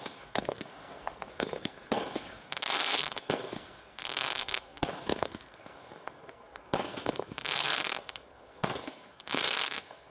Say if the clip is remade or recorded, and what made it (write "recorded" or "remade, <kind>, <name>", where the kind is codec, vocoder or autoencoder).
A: remade, codec, SNAC